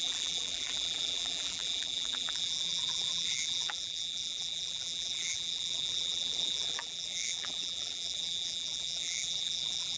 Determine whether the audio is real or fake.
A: fake